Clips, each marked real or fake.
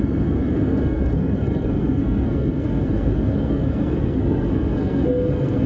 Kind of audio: fake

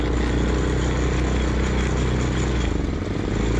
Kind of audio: real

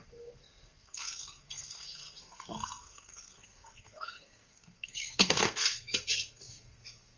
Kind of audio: fake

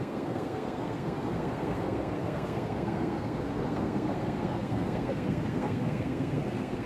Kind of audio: fake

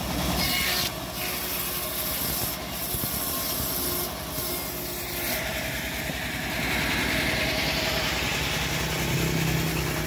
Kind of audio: real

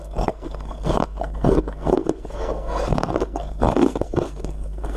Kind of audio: fake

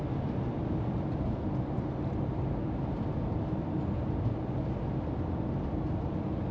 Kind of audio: real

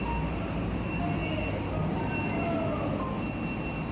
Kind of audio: real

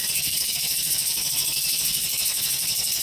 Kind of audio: fake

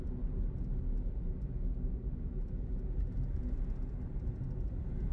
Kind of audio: real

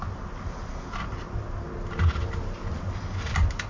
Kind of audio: real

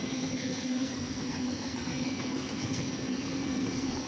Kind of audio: fake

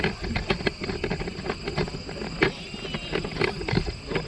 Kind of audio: real